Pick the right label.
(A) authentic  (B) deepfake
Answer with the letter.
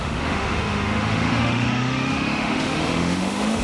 B